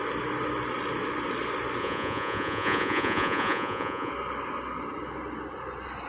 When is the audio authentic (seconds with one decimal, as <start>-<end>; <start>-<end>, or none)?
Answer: 0.0-1.8; 4.1-6.1